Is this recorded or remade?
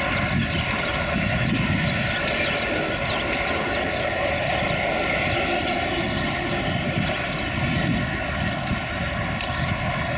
recorded